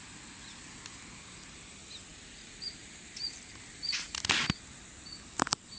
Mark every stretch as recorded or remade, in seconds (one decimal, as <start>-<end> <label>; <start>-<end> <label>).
0.0-5.8 recorded